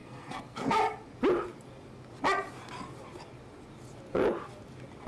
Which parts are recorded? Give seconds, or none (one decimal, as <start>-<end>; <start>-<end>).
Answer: 0.8-5.1